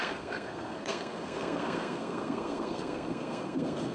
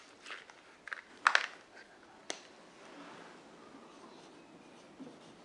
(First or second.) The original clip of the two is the second